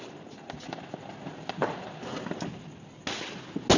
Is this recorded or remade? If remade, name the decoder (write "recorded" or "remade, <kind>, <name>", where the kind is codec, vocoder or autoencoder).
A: recorded